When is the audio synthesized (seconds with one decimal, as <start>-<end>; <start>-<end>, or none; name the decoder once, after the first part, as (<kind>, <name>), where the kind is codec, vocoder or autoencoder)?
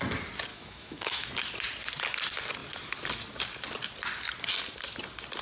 0.5-1.3 (autoencoder, DAC-VAE)